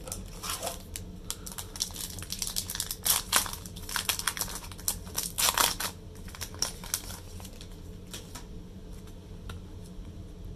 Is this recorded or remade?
recorded